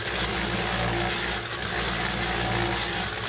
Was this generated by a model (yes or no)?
no